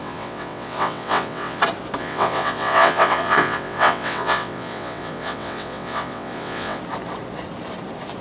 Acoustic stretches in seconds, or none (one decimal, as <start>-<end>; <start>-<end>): 1.6-2.0; 6.8-8.2